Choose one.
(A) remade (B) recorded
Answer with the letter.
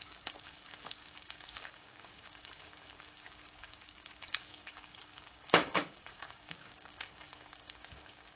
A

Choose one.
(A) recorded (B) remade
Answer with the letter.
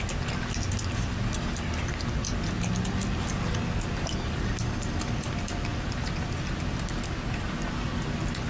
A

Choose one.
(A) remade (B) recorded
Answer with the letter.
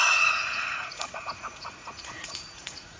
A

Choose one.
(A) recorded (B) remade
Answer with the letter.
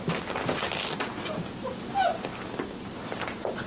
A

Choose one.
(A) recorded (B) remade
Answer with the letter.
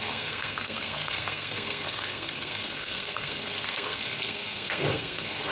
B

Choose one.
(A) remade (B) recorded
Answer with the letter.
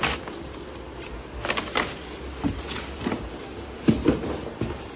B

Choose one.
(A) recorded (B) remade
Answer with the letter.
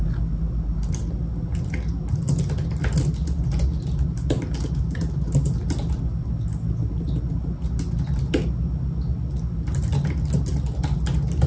A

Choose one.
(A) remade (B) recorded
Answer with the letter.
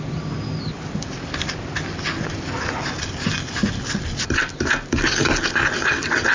B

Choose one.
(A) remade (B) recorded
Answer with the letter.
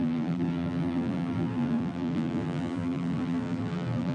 A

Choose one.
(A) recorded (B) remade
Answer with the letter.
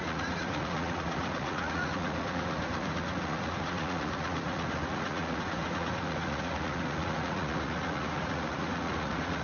B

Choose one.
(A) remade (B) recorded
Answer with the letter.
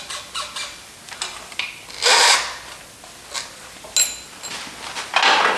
B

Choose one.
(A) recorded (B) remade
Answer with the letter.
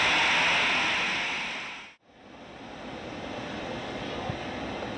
A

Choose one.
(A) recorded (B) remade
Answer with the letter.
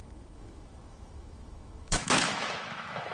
B